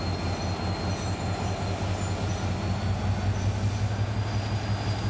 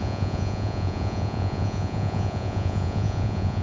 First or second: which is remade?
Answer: second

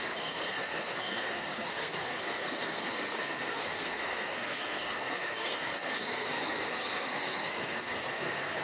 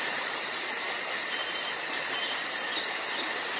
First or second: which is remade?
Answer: first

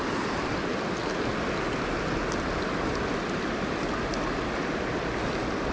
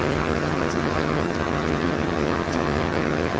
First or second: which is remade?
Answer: second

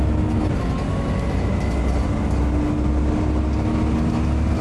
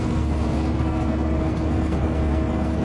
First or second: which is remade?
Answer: second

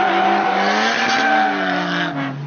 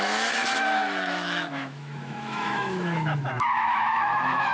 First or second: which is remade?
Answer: second